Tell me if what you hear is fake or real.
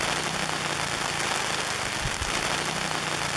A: real